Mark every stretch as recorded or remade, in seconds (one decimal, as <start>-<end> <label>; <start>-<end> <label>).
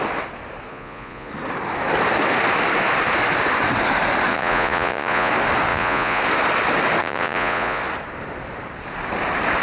0.0-0.7 recorded; 0.7-1.3 remade; 1.3-4.3 recorded; 4.3-5.3 remade; 5.3-5.7 recorded; 5.7-6.2 remade; 6.2-7.0 recorded; 7.0-7.8 remade; 7.8-9.6 recorded